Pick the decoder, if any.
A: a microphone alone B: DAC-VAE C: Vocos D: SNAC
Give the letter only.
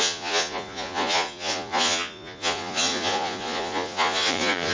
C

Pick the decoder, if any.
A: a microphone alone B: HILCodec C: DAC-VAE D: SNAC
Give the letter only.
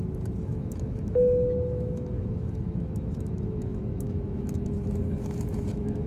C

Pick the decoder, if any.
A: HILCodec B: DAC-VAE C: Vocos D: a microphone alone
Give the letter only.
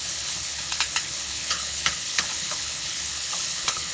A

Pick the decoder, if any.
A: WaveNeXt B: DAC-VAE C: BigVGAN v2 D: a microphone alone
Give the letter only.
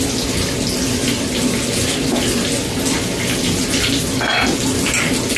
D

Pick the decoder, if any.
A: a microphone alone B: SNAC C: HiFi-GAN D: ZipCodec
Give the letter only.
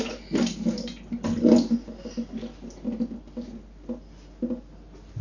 A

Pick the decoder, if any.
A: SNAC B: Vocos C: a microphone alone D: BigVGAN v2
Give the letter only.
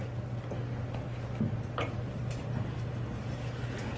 C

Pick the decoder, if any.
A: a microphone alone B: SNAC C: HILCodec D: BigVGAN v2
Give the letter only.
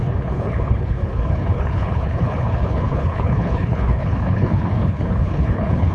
C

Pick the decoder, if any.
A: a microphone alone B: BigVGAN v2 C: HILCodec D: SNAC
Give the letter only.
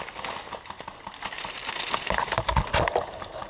A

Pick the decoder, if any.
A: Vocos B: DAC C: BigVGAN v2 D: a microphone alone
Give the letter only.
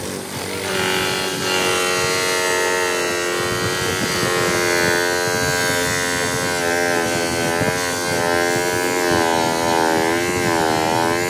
D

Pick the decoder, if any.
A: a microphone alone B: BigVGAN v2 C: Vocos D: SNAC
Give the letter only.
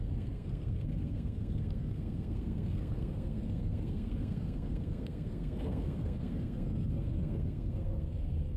D